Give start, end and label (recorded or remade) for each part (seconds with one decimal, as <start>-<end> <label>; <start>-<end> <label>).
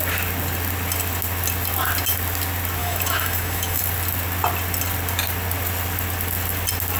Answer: 0.0-2.8 recorded; 2.8-3.8 remade; 3.8-7.0 recorded